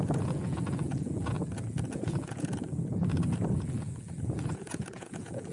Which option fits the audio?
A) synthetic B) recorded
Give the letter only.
A